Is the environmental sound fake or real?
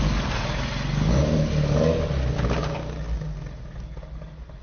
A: real